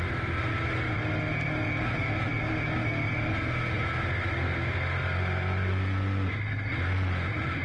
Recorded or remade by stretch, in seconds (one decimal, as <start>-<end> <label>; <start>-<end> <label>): 0.0-7.6 recorded